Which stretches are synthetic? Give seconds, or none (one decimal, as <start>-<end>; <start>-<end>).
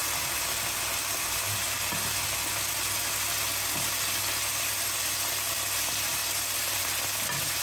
none